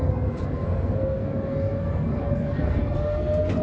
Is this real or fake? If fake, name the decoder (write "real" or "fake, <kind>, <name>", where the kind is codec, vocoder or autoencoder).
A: fake, codec, SNAC